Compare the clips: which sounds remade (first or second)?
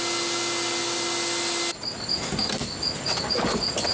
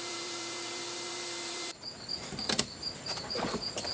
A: second